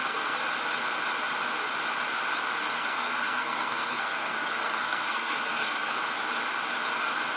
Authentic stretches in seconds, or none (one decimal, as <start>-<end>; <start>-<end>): 0.4-2.6; 6.0-7.4